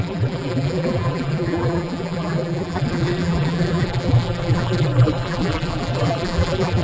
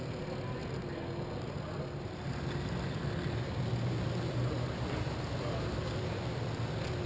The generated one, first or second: first